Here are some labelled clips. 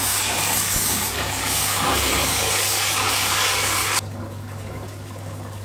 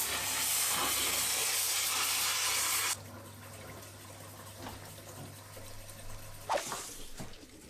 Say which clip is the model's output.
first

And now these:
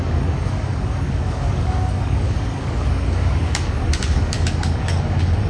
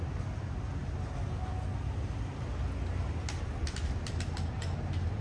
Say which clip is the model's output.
first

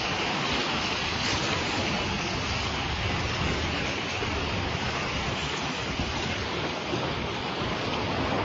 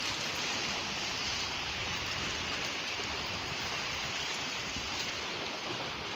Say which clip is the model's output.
first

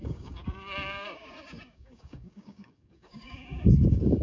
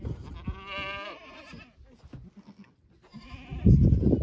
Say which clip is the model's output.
first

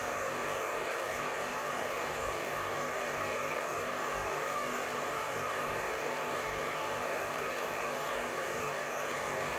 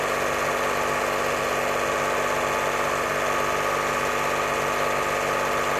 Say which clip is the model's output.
first